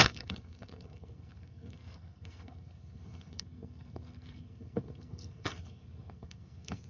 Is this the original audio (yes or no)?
no